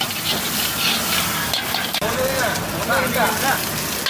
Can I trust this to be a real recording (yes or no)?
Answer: yes